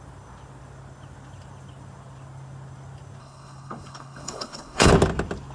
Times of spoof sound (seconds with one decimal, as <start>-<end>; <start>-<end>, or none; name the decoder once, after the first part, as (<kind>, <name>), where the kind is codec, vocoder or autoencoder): 3.2-4.9 (codec, HILCodec)